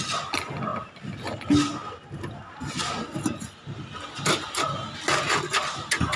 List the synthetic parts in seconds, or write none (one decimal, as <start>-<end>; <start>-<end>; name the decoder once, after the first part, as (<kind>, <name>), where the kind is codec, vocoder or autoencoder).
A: none